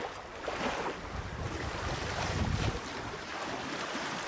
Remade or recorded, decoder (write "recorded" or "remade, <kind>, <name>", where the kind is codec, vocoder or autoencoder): recorded